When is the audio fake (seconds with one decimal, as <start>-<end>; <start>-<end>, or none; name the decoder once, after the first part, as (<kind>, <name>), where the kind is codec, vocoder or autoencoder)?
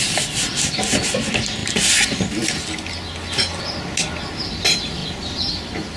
5.0-6.0 (vocoder, BigVGAN v2)